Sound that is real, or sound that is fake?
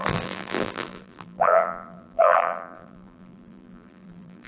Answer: fake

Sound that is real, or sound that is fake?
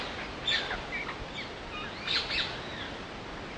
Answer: real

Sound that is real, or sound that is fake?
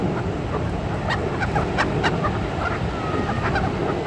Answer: real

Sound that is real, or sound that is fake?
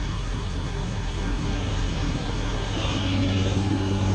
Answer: fake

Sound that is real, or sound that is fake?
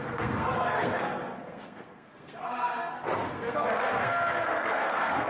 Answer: fake